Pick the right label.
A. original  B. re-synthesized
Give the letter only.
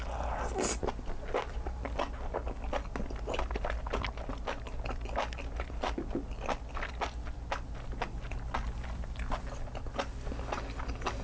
A